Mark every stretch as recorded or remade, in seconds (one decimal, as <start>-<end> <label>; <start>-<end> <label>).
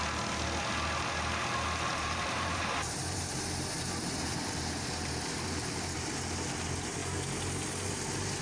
0.0-1.9 recorded; 1.9-6.1 remade; 6.1-8.4 recorded